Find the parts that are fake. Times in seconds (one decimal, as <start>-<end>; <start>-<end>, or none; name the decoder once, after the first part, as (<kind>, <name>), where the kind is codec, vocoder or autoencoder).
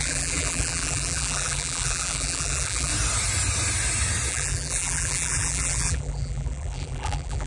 0.0-2.9 (vocoder, BigVGAN v2); 4.3-7.5